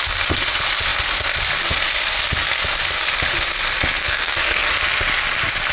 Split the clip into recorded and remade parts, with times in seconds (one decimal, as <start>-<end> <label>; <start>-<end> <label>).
0.0-4.0 recorded; 4.0-4.7 remade; 4.7-5.7 recorded